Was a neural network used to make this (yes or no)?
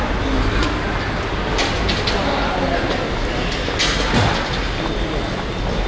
no